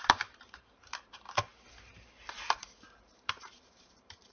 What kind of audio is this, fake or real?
fake